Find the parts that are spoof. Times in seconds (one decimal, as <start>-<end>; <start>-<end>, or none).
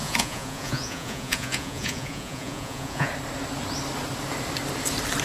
0.0-3.1